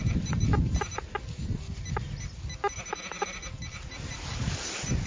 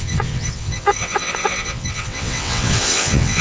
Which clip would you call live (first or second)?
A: first